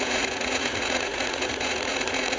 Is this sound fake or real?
fake